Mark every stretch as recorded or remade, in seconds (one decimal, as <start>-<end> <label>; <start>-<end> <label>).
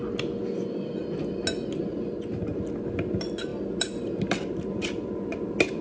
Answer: 0.0-5.8 recorded